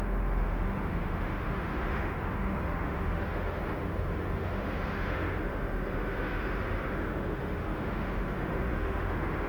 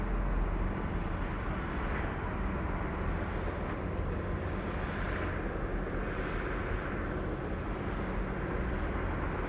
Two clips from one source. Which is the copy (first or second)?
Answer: first